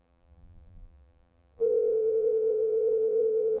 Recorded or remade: remade